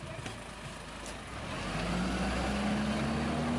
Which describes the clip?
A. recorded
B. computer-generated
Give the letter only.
A